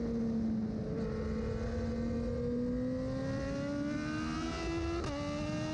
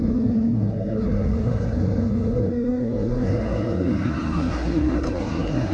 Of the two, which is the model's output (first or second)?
second